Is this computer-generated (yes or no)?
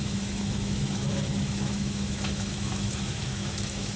yes